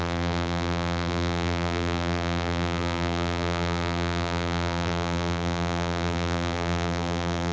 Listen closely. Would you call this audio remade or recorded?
remade